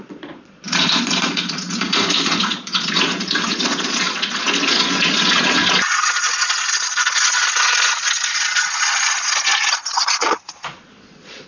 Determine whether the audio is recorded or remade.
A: remade